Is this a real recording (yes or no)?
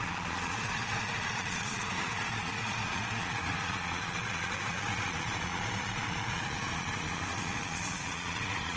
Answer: no